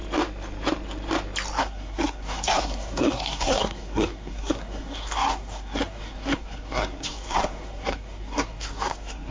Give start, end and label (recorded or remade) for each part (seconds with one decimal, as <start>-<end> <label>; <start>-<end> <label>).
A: 0.0-1.6 recorded; 1.6-9.3 remade